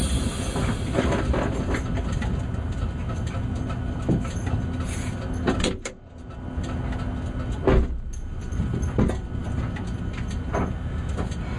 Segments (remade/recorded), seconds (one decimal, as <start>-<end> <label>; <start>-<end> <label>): 0.0-11.6 recorded